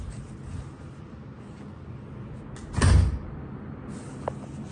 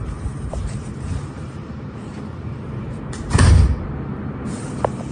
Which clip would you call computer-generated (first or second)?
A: second